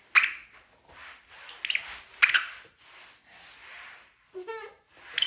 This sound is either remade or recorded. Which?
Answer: recorded